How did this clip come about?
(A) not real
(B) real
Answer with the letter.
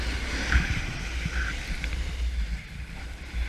B